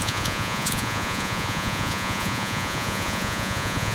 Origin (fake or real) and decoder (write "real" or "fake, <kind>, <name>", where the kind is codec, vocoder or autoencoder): fake, vocoder, Vocos